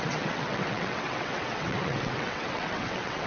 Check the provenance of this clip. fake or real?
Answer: fake